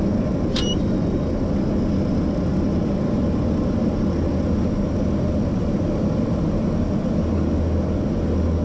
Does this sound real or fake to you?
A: real